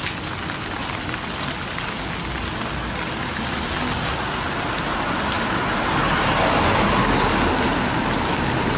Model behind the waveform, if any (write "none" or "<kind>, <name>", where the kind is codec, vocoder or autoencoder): none